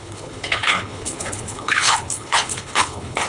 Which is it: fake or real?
fake